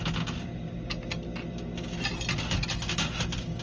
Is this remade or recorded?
recorded